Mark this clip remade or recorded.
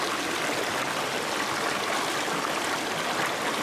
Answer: recorded